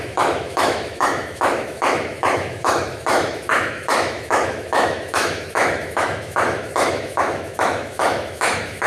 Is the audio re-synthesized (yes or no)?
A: yes